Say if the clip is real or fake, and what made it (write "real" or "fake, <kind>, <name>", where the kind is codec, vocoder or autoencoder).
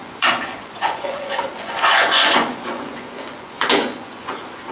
fake, vocoder, Vocos